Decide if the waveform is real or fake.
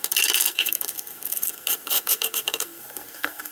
fake